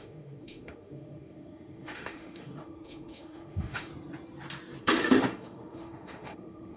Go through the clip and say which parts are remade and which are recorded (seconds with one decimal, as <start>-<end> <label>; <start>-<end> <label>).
0.0-3.9 remade; 3.9-4.8 recorded; 4.8-6.8 remade